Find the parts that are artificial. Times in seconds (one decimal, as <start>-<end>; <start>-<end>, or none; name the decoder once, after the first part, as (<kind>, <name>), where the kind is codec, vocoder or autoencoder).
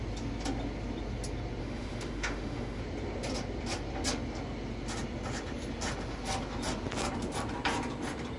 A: 1.6-2.8 (autoencoder, DAC-VAE)